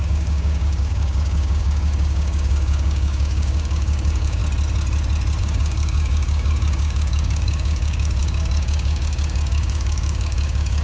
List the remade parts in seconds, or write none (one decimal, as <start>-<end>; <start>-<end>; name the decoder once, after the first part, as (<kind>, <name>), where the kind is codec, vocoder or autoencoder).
0.0-4.4 (codec, DAC); 5.4-10.8